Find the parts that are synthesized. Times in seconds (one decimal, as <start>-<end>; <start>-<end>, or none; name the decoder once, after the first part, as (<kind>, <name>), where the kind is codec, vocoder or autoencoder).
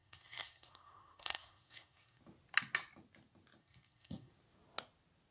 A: 0.0-2.2 (codec, SNAC); 3.6-4.3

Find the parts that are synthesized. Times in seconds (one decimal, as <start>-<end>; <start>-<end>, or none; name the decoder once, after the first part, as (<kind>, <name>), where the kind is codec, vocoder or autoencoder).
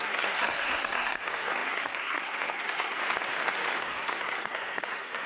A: 0.0-3.0 (codec, SNAC); 3.8-5.3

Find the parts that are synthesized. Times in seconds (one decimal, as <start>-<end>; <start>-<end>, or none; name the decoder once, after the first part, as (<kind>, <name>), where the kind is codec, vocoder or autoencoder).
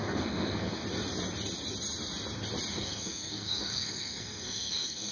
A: 0.0-0.8 (codec, SNAC); 2.7-5.1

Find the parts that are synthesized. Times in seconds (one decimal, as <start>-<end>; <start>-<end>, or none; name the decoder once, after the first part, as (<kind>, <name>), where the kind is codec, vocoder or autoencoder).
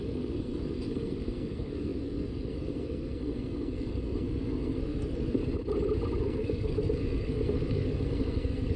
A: 0.0-5.4 (codec, SNAC); 6.2-8.8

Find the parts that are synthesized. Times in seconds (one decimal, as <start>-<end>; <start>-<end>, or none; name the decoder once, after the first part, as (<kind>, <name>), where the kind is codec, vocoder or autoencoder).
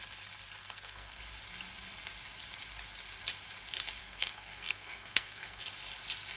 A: 0.6-1.2 (codec, SNAC); 4.0-5.6